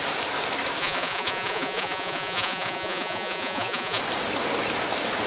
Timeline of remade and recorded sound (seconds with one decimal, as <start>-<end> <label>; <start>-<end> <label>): 0.0-0.8 recorded; 0.8-4.0 remade; 4.0-5.3 recorded